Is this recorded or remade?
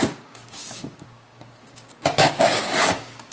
remade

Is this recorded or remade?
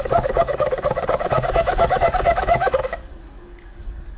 remade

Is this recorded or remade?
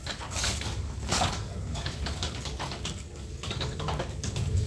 remade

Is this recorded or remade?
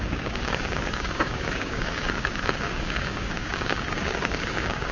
remade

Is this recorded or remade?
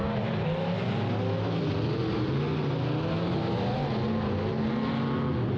recorded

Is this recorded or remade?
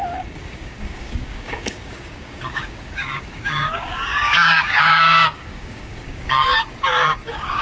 remade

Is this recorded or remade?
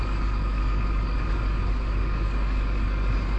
remade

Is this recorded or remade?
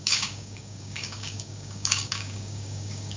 remade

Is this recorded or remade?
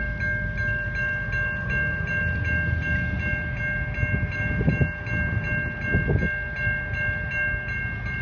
recorded